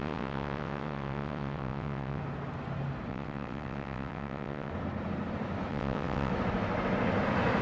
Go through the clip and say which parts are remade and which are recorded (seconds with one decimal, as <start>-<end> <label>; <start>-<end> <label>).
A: 0.0-2.2 remade; 2.2-3.1 recorded; 3.1-4.7 remade; 4.7-5.7 recorded; 5.7-6.3 remade; 6.3-7.6 recorded